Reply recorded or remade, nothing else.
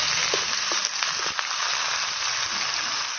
recorded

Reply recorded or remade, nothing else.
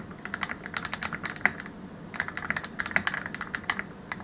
recorded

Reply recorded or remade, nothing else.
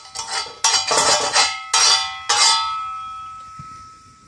recorded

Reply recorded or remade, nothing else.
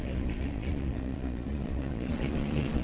remade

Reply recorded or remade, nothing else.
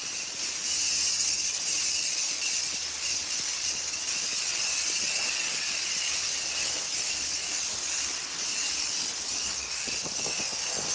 recorded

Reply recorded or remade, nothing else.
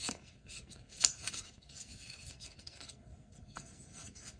remade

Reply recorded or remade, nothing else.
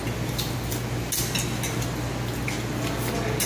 recorded